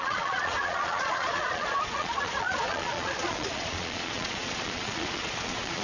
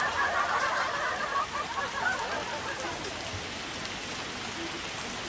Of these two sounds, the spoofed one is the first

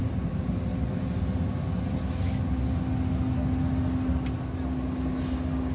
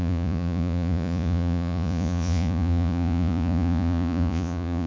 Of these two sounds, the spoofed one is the second